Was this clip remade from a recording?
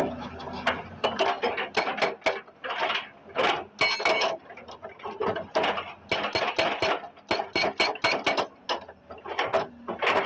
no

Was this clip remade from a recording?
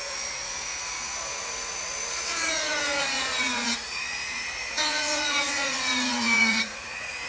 yes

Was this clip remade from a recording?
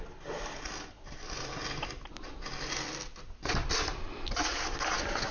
no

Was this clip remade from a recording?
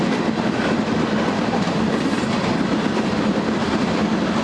no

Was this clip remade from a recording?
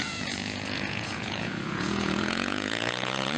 yes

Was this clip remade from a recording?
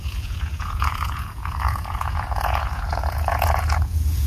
yes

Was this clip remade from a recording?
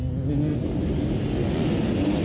no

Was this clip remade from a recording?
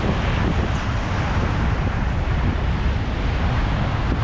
no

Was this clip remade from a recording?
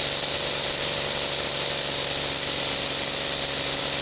no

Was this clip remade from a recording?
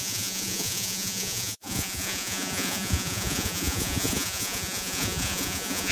yes